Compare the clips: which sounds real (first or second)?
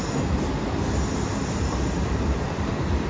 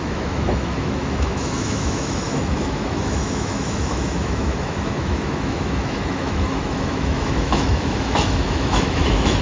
first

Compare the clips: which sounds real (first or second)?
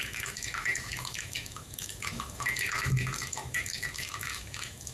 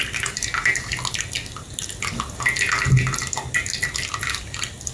second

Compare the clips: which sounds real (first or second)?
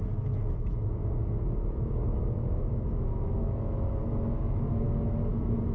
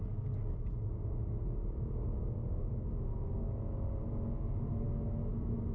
second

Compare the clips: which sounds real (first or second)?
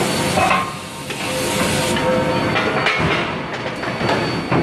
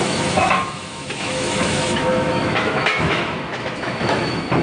first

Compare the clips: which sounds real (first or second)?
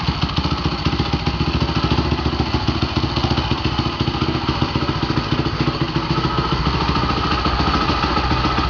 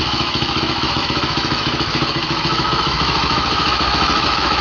first